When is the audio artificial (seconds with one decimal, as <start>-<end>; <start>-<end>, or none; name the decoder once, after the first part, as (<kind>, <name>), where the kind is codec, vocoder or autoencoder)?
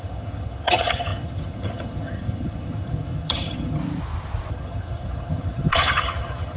0.0-3.8 (vocoder, HiFi-GAN); 4.5-6.6